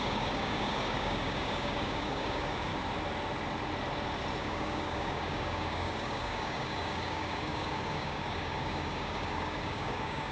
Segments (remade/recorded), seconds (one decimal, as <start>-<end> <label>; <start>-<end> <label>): 0.0-2.7 remade; 2.7-4.4 recorded; 4.4-10.3 remade